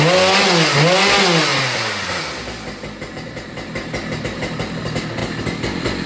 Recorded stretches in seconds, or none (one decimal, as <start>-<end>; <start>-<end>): 0.0-6.1